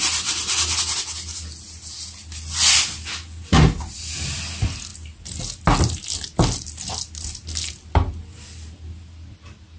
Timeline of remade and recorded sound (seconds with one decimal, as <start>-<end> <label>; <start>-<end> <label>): 0.0-9.8 recorded